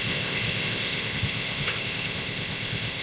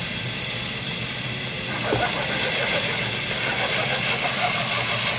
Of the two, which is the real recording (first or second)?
second